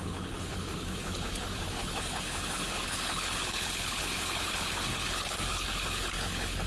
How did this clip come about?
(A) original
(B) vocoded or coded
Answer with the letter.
B